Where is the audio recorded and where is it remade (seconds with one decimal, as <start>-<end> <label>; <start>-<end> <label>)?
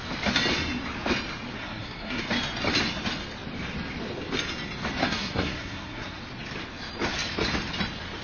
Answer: 0.0-1.6 recorded; 1.6-2.2 remade; 2.2-5.0 recorded; 5.0-6.2 remade; 6.2-8.2 recorded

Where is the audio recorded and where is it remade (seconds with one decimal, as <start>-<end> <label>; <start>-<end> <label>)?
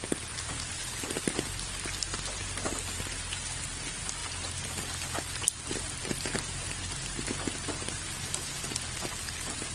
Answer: 0.0-9.7 recorded